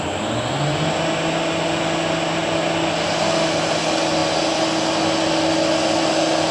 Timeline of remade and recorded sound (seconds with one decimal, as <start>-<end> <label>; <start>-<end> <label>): 0.0-6.5 recorded